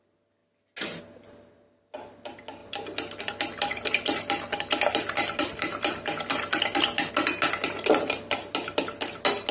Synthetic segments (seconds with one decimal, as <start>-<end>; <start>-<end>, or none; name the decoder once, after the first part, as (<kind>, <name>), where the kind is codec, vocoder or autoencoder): 2.6-7.1 (vocoder, BigVGAN v2)